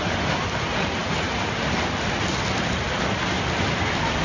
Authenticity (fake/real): real